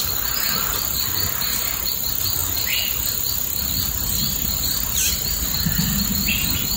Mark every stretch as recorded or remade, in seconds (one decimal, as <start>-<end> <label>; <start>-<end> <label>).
0.0-6.8 recorded